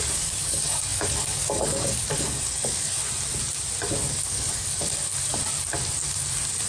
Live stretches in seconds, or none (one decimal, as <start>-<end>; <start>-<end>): 3.0-4.0; 5.1-6.7